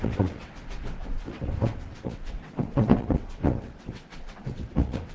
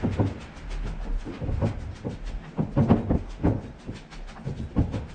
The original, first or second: second